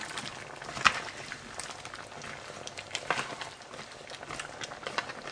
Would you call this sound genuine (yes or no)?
yes